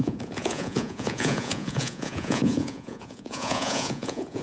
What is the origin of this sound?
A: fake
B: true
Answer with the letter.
A